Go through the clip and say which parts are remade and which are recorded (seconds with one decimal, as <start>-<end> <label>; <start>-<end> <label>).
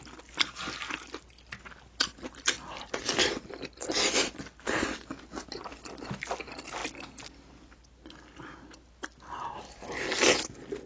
0.0-10.9 recorded